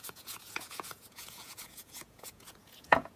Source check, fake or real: fake